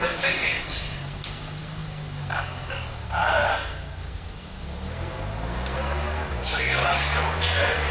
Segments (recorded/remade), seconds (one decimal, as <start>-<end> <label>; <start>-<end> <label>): 0.0-7.9 remade